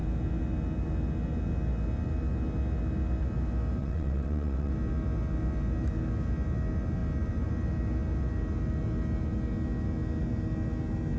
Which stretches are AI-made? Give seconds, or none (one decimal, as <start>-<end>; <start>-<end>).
3.8-4.7